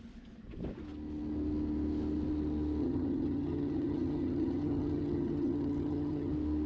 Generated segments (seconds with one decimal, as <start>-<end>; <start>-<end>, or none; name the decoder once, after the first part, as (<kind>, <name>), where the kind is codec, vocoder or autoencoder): 2.8-6.3 (vocoder, HiFi-GAN)